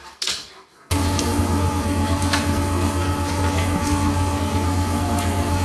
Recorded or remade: remade